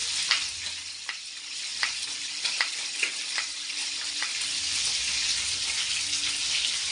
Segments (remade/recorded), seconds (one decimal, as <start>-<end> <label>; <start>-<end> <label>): 0.0-6.9 recorded